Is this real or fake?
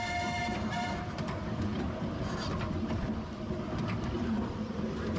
real